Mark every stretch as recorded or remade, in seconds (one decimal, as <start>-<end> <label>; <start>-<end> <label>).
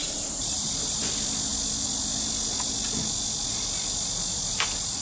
0.0-1.0 remade; 1.0-5.0 recorded